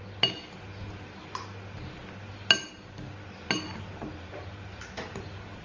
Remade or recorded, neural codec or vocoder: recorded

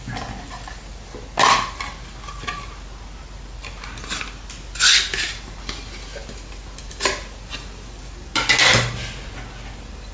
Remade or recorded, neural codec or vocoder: recorded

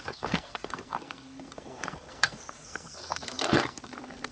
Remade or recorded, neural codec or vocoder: remade, codec, SNAC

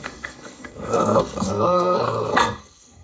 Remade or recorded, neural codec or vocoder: remade, codec, SNAC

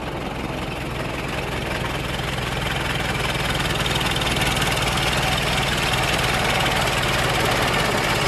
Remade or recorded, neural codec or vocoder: recorded